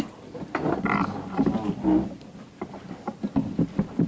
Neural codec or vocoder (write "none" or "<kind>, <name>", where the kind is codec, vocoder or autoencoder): none